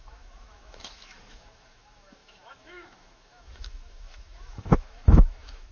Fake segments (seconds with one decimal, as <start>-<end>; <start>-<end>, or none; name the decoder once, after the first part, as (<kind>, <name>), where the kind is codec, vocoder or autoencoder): 0.0-5.7 (autoencoder, DAC-VAE)